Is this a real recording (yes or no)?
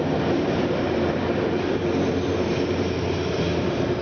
no